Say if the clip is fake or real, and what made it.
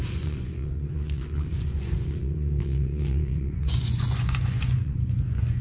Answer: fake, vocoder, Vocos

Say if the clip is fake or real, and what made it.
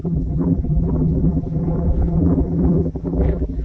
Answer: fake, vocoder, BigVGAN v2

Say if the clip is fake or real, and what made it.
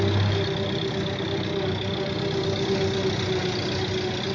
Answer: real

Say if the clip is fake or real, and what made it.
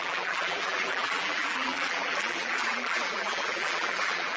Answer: fake, vocoder, BigVGAN v2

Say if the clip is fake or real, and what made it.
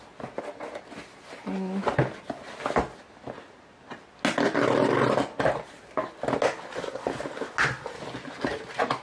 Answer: real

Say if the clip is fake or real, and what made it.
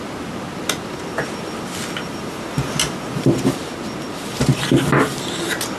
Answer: real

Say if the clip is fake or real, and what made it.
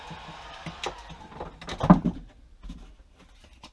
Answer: real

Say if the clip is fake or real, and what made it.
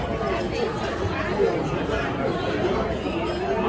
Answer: real